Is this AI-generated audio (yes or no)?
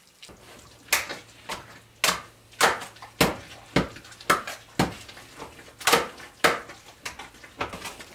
no